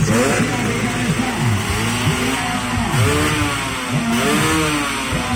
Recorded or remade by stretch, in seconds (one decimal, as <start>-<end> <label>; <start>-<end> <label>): 0.0-5.4 recorded

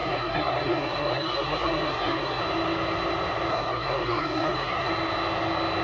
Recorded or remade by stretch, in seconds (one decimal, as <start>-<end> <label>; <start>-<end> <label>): 0.0-2.4 remade; 2.4-3.5 recorded; 3.5-4.9 remade; 4.9-5.8 recorded

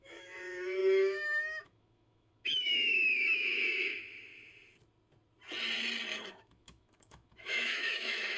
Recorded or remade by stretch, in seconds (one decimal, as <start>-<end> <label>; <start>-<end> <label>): 0.0-4.3 remade; 4.3-6.3 recorded; 6.3-8.4 remade

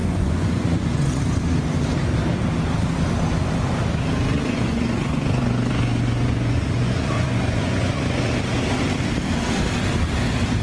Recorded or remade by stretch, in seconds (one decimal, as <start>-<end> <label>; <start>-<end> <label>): 0.0-1.2 remade; 1.2-4.3 recorded; 4.3-8.2 remade; 8.2-10.6 recorded